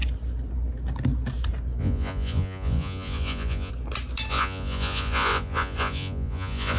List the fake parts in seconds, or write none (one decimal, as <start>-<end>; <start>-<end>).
1.8-3.7; 4.3-6.8